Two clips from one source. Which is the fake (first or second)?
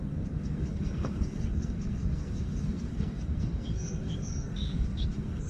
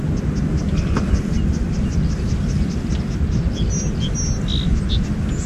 first